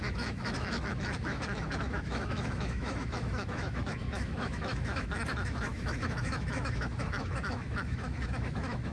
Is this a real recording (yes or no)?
no